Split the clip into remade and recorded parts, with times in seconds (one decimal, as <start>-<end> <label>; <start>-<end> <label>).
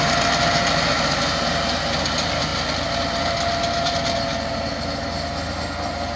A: 0.0-6.2 recorded